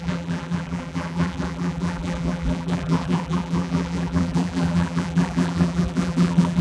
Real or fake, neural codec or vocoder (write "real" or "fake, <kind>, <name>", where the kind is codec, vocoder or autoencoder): fake, vocoder, BigVGAN v2